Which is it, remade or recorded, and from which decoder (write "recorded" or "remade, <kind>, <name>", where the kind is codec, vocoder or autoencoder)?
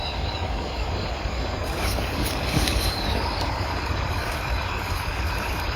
remade, codec, DAC